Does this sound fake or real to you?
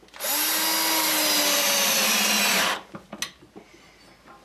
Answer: real